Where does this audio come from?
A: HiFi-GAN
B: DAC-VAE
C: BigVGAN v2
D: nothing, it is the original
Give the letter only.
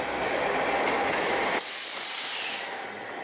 D